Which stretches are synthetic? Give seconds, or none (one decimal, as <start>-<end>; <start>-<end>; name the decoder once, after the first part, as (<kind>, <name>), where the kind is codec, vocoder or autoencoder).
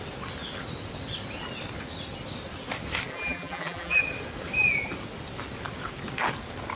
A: 3.1-4.0 (vocoder, BigVGAN v2)